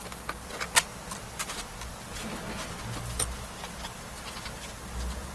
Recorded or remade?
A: recorded